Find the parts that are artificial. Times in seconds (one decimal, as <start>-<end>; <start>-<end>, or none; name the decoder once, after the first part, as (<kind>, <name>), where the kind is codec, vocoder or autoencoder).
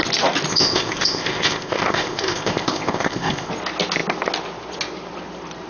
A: 0.5-3.5 (codec, ZipCodec)